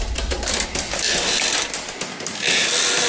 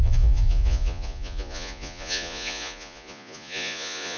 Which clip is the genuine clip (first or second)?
first